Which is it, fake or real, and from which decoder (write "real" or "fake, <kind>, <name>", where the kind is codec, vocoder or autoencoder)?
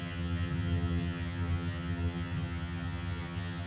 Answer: fake, vocoder, HiFi-GAN